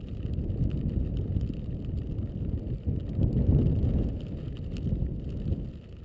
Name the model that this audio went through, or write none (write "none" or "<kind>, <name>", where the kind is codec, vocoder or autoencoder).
none